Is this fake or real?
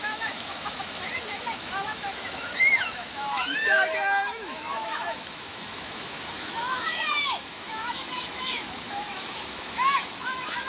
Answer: fake